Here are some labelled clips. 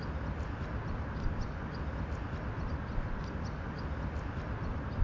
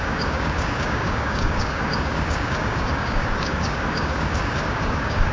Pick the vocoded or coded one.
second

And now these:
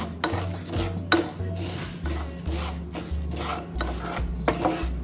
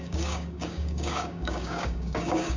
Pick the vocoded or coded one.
second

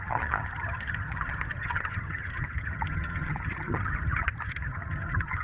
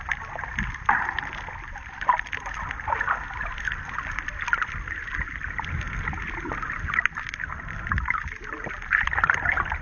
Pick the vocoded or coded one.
first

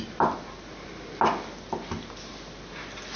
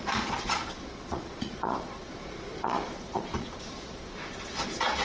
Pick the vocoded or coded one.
second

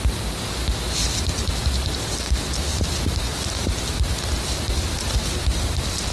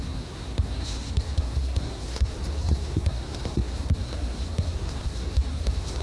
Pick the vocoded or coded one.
second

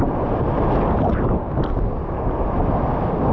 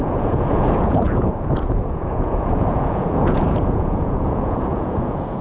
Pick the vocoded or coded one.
second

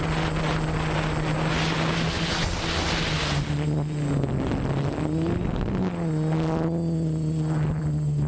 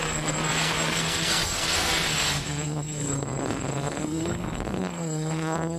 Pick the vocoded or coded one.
second